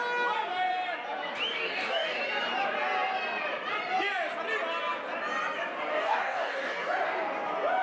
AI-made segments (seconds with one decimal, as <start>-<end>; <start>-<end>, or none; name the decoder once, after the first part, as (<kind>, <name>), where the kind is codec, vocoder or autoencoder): 1.5-2.2 (codec, DAC); 5.9-6.9